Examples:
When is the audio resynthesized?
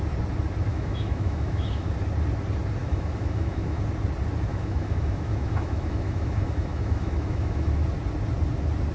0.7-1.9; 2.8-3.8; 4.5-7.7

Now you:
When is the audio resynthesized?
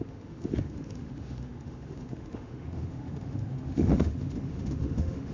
0.0-5.3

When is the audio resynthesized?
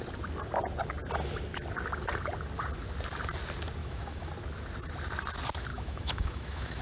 3.8-4.3; 5.7-6.8